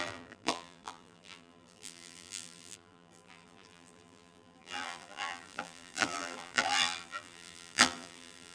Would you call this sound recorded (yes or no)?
no